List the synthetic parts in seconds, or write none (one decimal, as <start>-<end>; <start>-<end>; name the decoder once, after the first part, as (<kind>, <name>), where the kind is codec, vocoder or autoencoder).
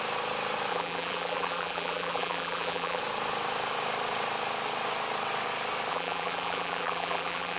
0.7-3.0 (vocoder, BigVGAN v2); 5.9-7.6